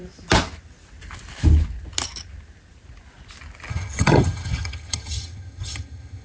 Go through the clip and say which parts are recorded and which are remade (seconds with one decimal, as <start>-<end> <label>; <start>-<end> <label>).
0.0-3.7 recorded; 3.7-6.2 remade